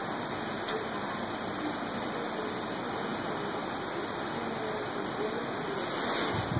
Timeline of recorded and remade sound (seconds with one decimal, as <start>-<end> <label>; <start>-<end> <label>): 0.0-6.6 recorded